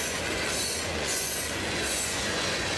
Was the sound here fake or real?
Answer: fake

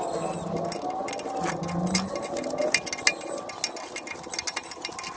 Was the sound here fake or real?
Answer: real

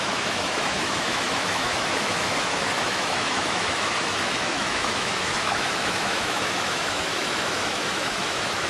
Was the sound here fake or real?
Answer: fake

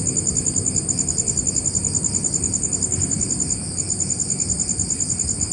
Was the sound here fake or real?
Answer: real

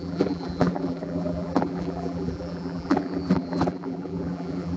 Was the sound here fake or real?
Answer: fake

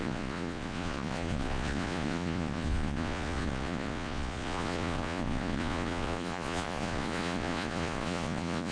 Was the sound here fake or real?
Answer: fake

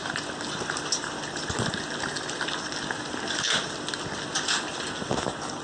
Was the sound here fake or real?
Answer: real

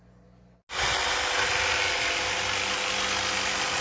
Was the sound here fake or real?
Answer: real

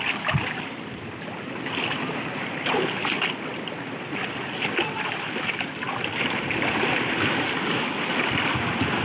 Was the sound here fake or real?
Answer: real